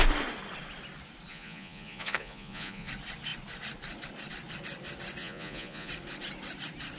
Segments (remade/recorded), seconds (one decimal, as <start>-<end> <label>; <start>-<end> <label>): 0.0-1.3 recorded; 1.3-2.9 remade; 2.9-5.2 recorded; 5.2-5.9 remade; 5.9-7.0 recorded